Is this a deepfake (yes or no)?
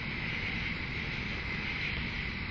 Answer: no